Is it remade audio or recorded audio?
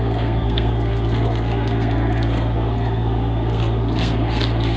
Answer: remade